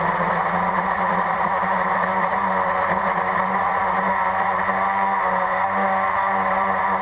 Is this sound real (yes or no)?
yes